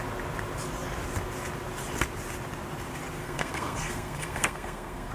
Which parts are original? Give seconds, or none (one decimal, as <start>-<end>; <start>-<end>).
0.0-3.2